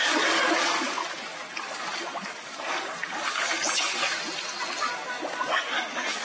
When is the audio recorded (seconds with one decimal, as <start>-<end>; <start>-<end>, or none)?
1.0-1.5; 4.0-5.1